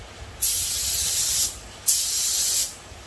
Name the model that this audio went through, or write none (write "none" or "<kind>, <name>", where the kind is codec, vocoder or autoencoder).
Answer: none